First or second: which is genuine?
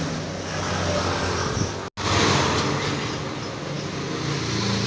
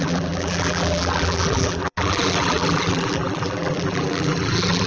first